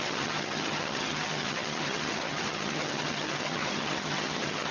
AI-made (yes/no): yes